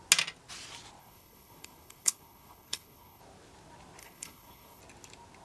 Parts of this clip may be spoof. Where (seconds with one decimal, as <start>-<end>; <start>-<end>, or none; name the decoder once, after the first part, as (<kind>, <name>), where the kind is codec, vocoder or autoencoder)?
1.0-3.2 (codec, HILCodec); 4.0-4.8